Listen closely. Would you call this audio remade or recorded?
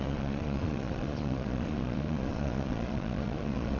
remade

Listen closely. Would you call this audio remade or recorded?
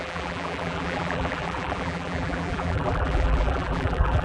remade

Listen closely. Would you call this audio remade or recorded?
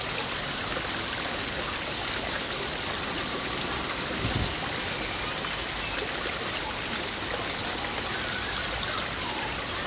recorded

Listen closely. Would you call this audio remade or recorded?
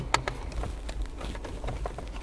recorded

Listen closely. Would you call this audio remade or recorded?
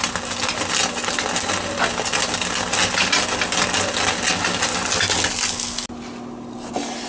recorded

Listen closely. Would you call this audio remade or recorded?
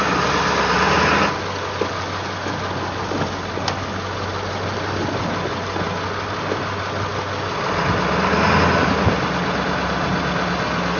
recorded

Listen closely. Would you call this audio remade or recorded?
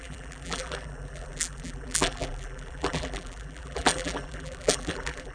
remade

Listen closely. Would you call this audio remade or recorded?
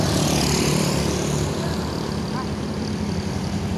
remade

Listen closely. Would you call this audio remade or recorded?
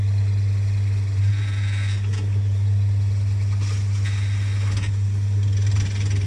recorded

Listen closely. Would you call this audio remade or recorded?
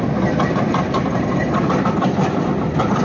recorded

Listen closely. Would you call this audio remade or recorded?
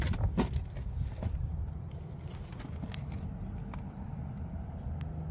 recorded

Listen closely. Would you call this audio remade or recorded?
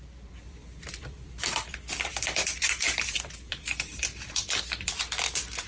remade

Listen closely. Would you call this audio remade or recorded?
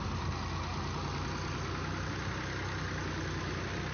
recorded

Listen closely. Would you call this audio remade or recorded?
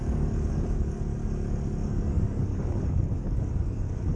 remade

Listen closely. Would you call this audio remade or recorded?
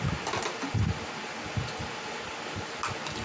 recorded